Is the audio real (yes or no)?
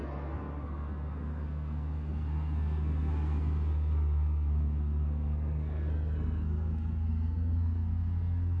no